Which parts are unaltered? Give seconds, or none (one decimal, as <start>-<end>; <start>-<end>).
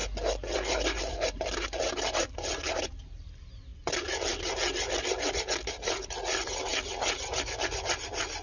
3.7-4.9; 6.7-8.0